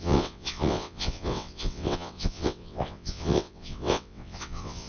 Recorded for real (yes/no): no